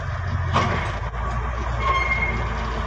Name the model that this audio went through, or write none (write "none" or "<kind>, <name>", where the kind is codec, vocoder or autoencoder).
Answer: none